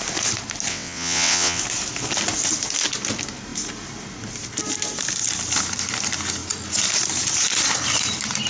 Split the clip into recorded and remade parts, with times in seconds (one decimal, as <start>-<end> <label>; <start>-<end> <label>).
0.0-0.7 recorded; 0.7-1.6 remade; 1.6-8.5 recorded